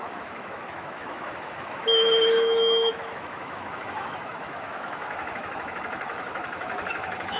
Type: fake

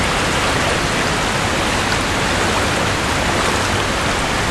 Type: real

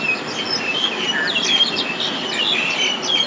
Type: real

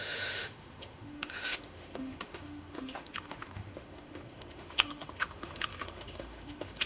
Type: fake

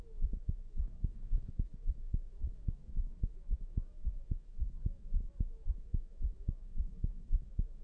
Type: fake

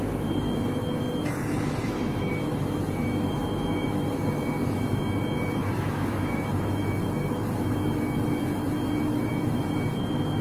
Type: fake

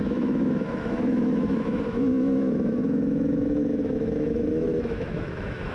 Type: fake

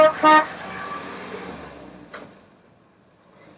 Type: real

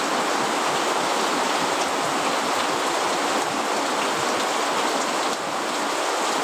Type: real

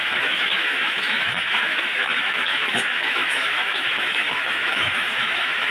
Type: fake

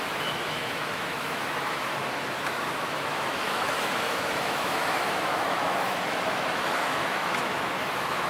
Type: fake